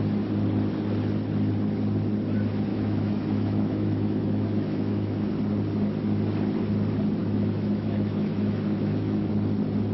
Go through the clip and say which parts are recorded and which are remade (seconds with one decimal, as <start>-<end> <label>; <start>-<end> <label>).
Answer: 0.0-2.7 recorded; 2.7-5.3 remade; 5.3-7.2 recorded; 7.2-9.3 remade; 9.3-9.9 recorded

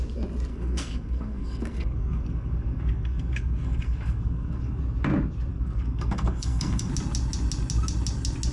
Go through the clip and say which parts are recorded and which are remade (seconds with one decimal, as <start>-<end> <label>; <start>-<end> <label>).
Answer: 0.0-0.5 recorded; 0.5-4.8 remade; 4.8-5.5 recorded; 5.5-6.9 remade; 6.9-8.5 recorded

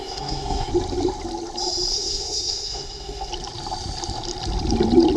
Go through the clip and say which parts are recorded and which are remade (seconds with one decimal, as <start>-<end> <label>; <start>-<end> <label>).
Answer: 0.0-0.7 remade; 0.7-1.9 recorded; 1.9-3.3 remade; 3.3-5.2 recorded

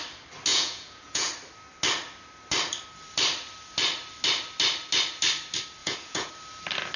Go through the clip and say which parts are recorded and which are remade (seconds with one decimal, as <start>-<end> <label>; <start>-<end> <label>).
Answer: 0.0-0.5 recorded; 0.5-1.3 remade; 1.3-5.8 recorded; 5.8-6.3 remade; 6.3-7.0 recorded